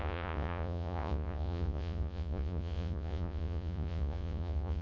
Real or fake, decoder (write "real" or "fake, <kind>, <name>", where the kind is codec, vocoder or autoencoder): fake, vocoder, Vocos